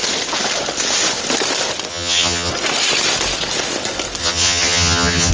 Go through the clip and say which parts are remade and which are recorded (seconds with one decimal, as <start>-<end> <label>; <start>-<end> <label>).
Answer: 0.0-1.9 recorded; 1.9-2.5 remade; 2.5-4.2 recorded; 4.2-5.3 remade